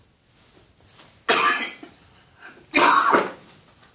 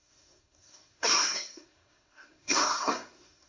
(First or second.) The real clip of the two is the first